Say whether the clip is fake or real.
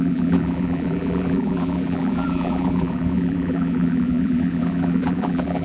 fake